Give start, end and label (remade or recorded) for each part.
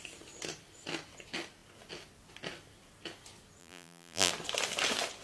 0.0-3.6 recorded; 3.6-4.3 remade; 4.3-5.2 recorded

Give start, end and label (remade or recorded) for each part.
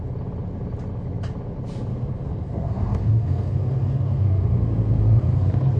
0.0-1.9 recorded; 1.9-5.8 remade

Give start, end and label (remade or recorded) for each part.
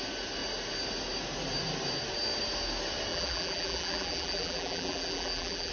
0.0-3.1 recorded; 3.1-5.7 remade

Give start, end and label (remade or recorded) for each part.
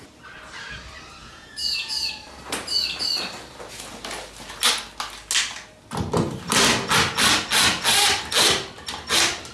0.0-1.2 recorded; 1.2-2.1 remade; 2.1-9.5 recorded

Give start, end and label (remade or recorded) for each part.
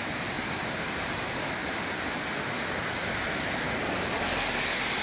0.0-5.0 recorded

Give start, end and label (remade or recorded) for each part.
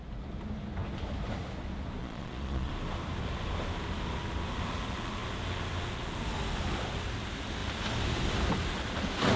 0.0-2.0 recorded; 2.0-2.7 remade; 2.7-9.4 recorded